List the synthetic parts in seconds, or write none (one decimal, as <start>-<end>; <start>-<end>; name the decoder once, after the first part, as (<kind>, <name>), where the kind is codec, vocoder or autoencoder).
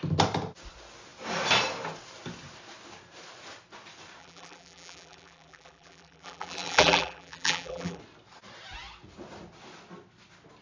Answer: 4.2-8.0 (vocoder, BigVGAN v2)